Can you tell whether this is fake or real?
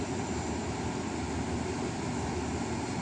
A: real